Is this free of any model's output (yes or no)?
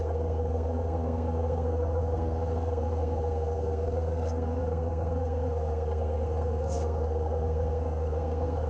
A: no